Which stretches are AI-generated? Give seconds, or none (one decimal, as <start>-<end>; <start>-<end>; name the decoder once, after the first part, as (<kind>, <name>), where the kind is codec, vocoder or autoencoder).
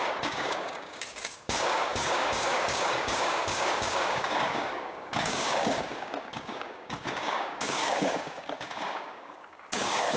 0.0-10.2 (codec, DAC)